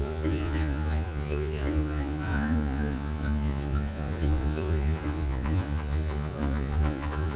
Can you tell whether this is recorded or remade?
remade